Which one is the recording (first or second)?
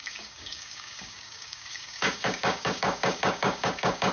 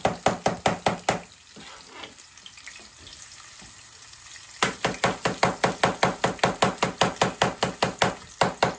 second